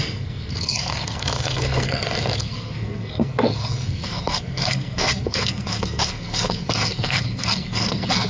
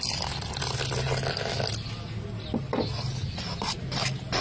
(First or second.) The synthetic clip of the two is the first